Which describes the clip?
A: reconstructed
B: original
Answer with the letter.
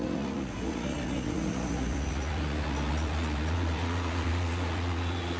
A